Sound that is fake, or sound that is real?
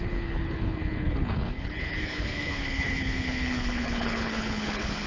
fake